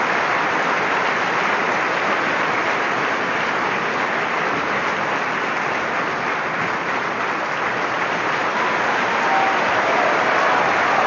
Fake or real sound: real